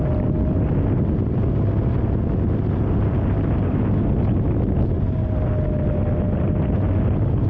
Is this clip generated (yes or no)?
no